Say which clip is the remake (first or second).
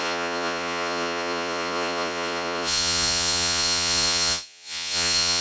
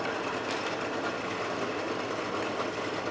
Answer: first